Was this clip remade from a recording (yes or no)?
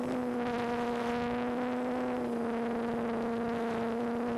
no